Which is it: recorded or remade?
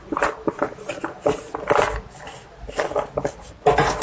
recorded